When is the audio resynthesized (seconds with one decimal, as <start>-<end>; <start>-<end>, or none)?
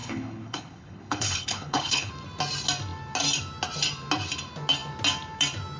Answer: 0.0-2.1